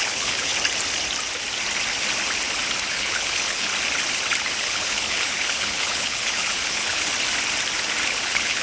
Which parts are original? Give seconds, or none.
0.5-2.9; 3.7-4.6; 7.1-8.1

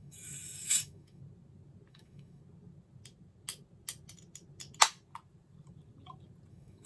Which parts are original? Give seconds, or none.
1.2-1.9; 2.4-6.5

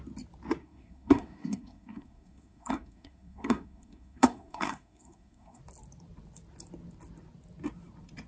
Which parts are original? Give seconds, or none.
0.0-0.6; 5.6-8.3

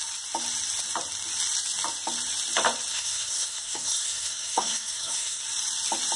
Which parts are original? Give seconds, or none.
0.0-2.9; 5.4-6.2